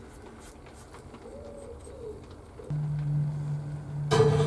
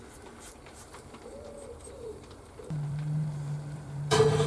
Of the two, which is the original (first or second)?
first